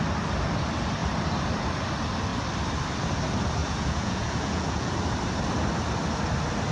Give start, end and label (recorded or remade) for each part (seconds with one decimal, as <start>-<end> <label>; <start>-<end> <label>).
0.0-3.6 recorded; 3.6-4.9 remade; 4.9-6.7 recorded